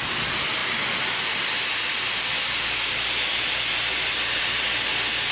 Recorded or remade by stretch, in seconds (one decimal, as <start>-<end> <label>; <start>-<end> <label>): 0.0-5.3 recorded